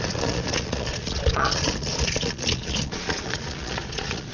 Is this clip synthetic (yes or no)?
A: yes